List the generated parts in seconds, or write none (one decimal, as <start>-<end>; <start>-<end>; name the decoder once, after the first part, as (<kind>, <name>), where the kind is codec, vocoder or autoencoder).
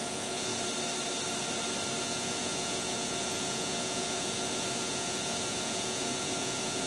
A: 0.0-0.5 (vocoder, Vocos); 2.0-6.9